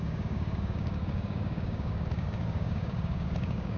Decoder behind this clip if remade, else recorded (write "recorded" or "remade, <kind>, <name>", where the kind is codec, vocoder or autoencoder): remade, codec, DAC